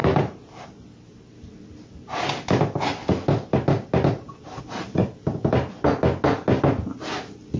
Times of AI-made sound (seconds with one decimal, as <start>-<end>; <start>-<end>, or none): none